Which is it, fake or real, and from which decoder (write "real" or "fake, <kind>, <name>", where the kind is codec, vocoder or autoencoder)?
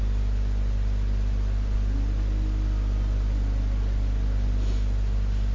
real